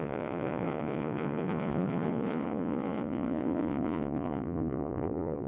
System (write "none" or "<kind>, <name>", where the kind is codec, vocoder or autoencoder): vocoder, Vocos